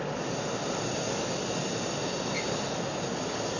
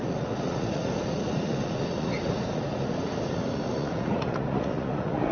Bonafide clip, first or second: first